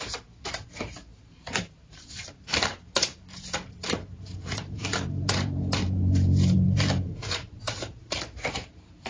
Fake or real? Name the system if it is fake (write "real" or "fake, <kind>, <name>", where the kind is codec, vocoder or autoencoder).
fake, vocoder, BigVGAN v2